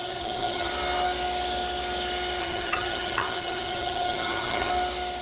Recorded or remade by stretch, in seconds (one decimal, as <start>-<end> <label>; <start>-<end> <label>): 0.0-0.7 remade; 0.7-2.4 recorded; 2.4-4.7 remade; 4.7-5.2 recorded

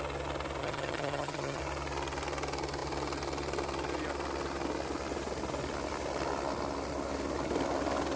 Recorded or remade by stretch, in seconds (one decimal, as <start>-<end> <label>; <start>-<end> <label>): 0.0-0.6 recorded; 0.6-1.6 remade; 1.6-8.2 recorded

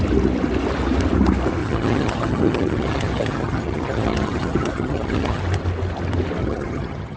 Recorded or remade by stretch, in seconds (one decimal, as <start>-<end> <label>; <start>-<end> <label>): 0.0-1.6 recorded; 1.6-5.4 remade; 5.4-6.4 recorded; 6.4-7.2 remade

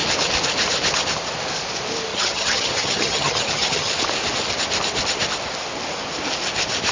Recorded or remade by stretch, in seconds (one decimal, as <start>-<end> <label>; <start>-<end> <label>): 0.0-2.1 recorded; 2.1-3.9 remade; 3.9-6.9 recorded

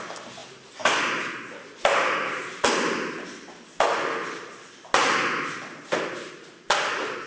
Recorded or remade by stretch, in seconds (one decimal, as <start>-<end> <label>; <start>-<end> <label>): 0.0-7.3 recorded